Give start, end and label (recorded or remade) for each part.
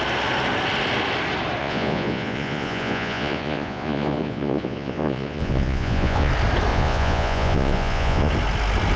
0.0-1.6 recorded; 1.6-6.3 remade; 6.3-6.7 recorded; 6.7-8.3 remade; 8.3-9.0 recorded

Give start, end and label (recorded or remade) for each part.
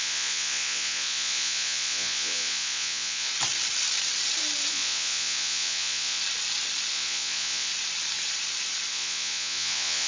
0.0-3.3 remade; 3.3-4.7 recorded; 4.7-6.2 remade; 6.2-6.9 recorded; 6.9-7.7 remade; 7.7-8.9 recorded; 8.9-10.1 remade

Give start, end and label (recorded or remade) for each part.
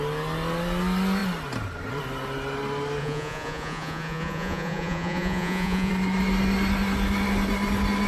0.0-3.0 recorded; 3.0-5.9 remade; 5.9-8.1 recorded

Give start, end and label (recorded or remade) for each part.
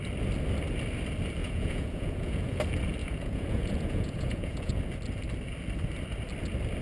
0.0-1.4 recorded; 1.4-2.6 remade; 2.6-3.0 recorded; 3.0-4.8 remade; 4.8-6.8 recorded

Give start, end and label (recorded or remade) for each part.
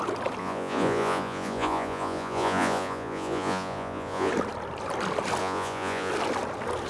0.0-0.4 recorded; 0.4-4.3 remade; 4.3-5.4 recorded; 5.4-6.1 remade; 6.1-6.9 recorded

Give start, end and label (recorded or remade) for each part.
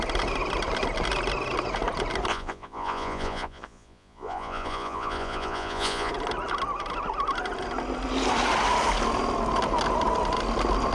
0.0-2.3 recorded; 2.3-6.1 remade; 6.1-10.9 recorded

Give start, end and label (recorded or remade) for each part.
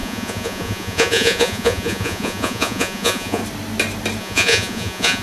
0.0-3.4 remade; 3.4-4.2 recorded; 4.2-5.2 remade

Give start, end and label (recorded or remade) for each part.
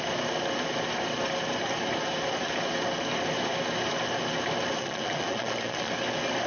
0.0-4.8 recorded; 4.8-5.9 remade; 5.9-6.5 recorded